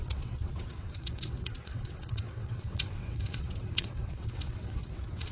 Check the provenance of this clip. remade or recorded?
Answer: remade